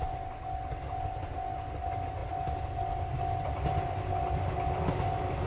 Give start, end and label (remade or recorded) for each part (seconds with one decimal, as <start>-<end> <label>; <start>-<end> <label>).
0.0-5.5 recorded